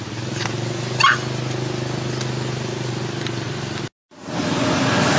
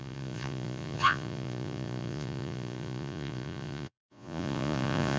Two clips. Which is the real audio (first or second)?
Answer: first